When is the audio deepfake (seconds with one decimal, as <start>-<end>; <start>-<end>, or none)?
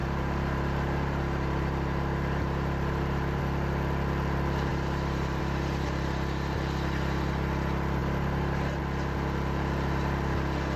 0.0-3.4; 4.7-5.4; 8.0-8.8